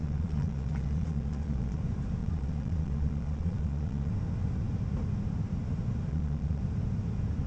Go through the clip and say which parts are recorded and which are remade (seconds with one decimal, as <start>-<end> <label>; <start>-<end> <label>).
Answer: 0.0-1.8 remade; 1.8-2.2 recorded; 2.2-4.1 remade; 4.1-6.1 recorded; 6.1-6.6 remade; 6.6-7.5 recorded